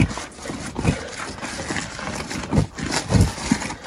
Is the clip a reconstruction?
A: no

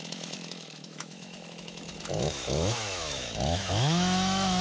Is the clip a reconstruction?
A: yes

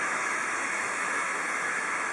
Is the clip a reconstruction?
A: yes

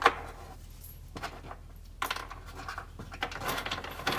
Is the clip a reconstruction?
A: no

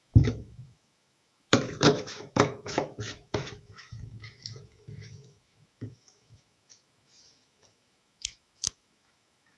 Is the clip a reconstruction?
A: yes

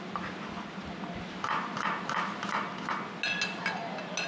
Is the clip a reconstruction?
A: no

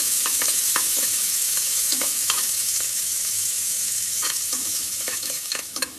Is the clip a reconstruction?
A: yes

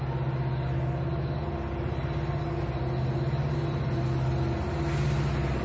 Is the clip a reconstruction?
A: no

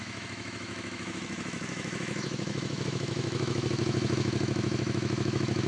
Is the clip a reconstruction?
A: yes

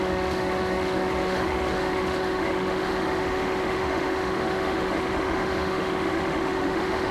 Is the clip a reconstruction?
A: yes